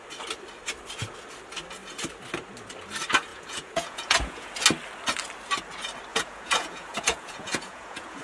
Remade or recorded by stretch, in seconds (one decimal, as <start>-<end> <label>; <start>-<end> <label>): 0.0-3.3 recorded; 3.3-4.5 remade; 4.5-6.1 recorded; 6.1-8.2 remade